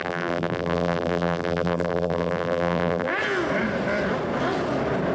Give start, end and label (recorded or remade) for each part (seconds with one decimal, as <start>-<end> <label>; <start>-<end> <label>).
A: 0.0-3.1 remade; 3.1-5.1 recorded